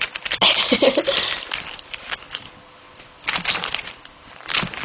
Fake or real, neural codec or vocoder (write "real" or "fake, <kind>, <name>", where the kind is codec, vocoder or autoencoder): real